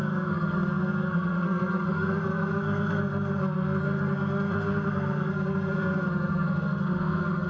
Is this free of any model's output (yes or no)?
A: no